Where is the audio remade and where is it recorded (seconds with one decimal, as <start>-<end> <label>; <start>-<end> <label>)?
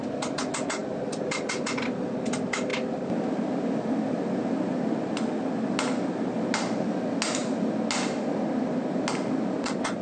0.0-10.0 recorded